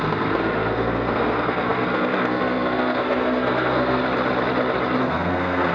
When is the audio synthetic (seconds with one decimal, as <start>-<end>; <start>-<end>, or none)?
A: 0.0-4.0; 5.0-5.7